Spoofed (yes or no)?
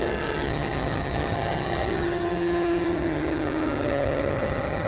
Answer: yes